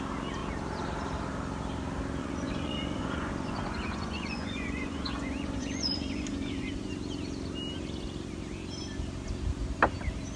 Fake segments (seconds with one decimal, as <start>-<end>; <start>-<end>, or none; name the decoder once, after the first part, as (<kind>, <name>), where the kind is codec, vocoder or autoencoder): 2.2-6.9 (vocoder, Vocos)